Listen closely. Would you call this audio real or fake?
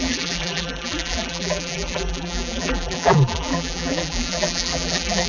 fake